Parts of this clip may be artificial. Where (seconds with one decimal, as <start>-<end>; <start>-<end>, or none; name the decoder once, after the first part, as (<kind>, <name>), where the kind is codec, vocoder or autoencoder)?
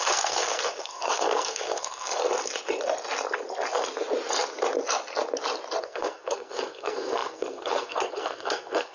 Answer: 0.0-2.2 (codec, SNAC); 5.8-8.9